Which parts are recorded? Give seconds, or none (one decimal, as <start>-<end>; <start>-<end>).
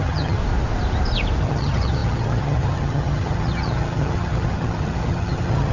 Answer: 0.4-1.4